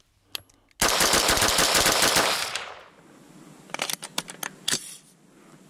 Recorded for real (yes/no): yes